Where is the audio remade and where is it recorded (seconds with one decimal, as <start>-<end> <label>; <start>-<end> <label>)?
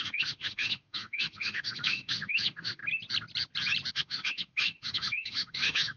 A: 0.0-2.8 remade; 2.8-3.9 recorded; 3.9-6.0 remade